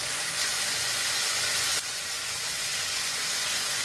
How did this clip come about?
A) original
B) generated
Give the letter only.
B